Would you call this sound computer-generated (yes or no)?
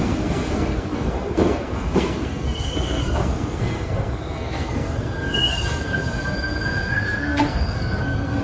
yes